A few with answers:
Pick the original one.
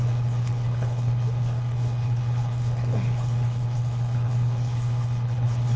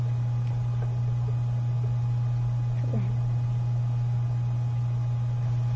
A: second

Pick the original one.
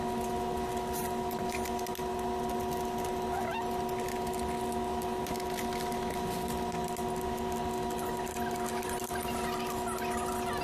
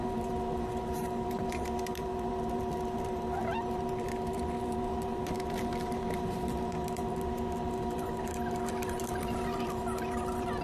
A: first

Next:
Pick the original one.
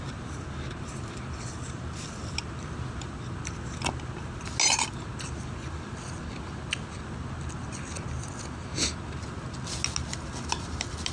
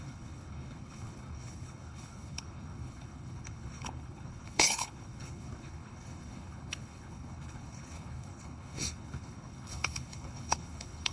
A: first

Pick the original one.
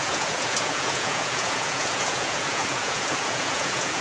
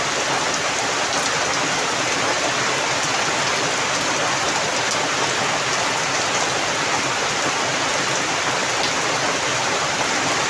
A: second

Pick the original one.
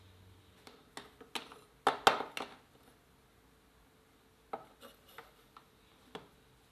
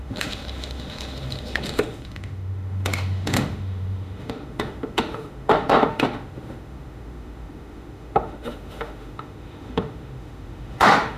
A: first